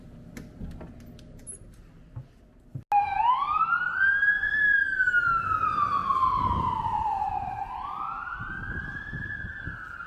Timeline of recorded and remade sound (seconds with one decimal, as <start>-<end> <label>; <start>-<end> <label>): 0.0-10.1 recorded